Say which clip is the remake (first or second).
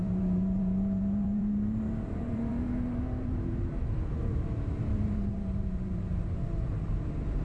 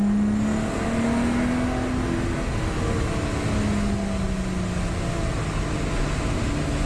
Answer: first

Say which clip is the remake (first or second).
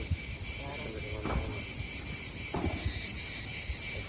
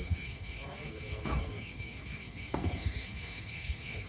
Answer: second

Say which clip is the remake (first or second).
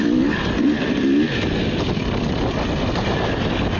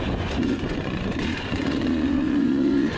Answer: second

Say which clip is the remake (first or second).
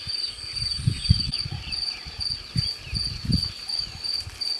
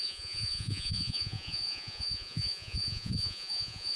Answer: second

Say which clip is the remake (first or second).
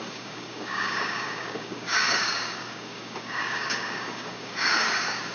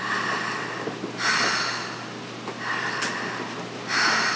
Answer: first